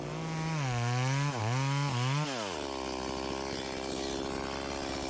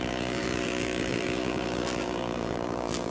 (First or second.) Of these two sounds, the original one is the first